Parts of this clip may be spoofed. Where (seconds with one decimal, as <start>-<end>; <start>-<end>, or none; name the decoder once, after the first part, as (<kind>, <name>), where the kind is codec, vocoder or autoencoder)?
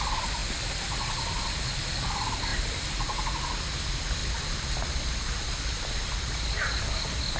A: none